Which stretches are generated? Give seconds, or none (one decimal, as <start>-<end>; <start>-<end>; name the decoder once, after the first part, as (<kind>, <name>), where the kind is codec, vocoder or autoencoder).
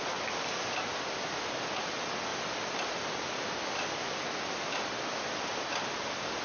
none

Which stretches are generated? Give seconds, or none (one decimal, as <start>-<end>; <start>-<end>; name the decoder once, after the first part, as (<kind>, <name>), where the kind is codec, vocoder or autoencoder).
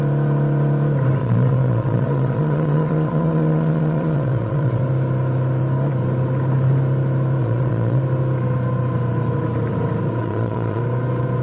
1.2-4.8 (vocoder, Vocos); 7.4-8.0; 10.2-10.8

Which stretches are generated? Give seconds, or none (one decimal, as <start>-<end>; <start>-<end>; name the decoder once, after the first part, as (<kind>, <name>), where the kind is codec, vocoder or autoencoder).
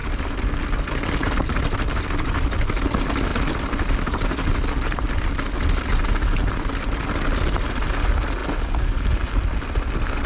none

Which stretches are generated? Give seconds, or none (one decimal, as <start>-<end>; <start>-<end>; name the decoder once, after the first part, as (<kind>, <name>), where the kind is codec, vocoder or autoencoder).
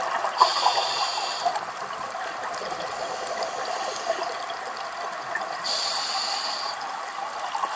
0.5-1.0 (vocoder, Vocos)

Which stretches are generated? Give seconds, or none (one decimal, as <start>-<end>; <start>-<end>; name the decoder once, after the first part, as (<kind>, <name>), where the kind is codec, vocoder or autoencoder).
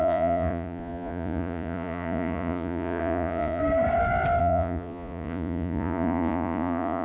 0.0-3.6 (vocoder, Vocos); 4.4-7.0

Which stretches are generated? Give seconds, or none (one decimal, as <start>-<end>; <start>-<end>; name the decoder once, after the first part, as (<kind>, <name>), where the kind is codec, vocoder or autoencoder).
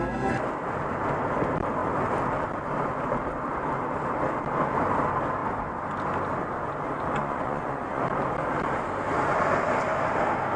7.2-8.0 (vocoder, Vocos)